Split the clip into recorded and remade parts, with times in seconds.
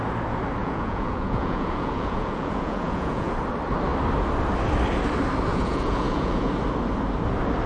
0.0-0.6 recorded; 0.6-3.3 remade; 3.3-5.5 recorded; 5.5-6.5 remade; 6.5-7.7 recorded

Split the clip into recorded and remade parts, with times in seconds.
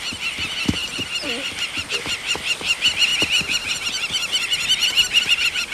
0.0-5.7 recorded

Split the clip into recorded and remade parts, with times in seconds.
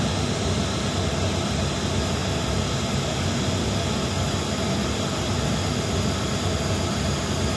0.0-7.6 recorded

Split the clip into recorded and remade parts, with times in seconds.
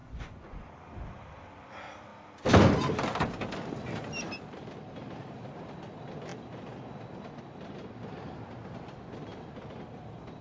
0.0-0.7 remade; 0.7-10.4 recorded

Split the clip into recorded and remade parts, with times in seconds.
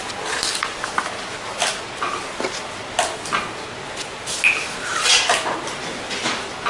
0.0-6.7 recorded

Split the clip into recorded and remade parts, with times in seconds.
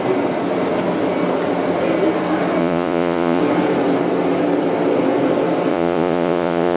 0.0-2.6 recorded; 2.6-3.4 remade; 3.4-5.7 recorded; 5.7-6.8 remade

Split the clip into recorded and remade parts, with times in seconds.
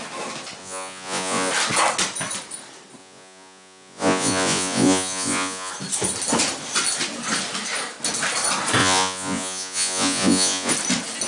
0.0-0.6 recorded; 0.6-1.5 remade; 1.5-3.0 recorded; 3.0-5.7 remade; 5.7-8.8 recorded; 8.8-10.7 remade; 10.7-11.3 recorded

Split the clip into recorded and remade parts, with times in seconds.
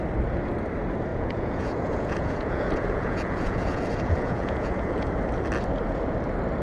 0.0-1.1 recorded; 1.1-5.1 remade; 5.1-6.6 recorded